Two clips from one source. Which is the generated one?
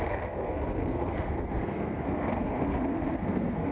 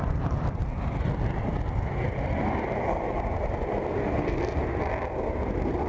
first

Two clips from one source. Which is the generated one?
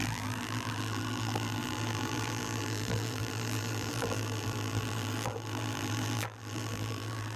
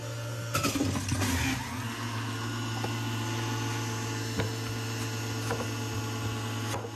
first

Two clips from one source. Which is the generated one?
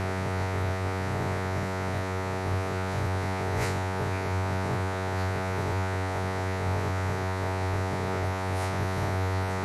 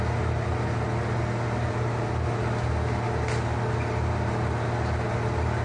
first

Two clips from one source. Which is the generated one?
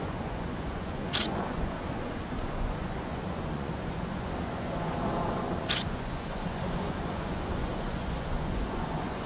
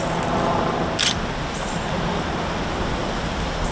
first